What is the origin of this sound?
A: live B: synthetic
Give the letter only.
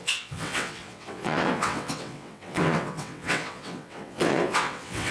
B